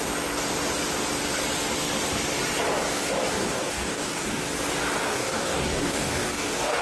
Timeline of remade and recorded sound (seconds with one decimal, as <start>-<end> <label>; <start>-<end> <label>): 0.0-3.4 recorded; 3.4-4.4 remade; 4.4-5.0 recorded; 5.0-6.8 remade